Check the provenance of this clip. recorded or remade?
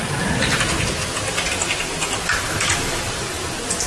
recorded